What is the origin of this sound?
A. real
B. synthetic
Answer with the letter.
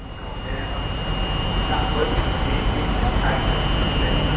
B